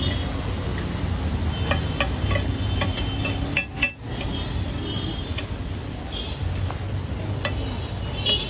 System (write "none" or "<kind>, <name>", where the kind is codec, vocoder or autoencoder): none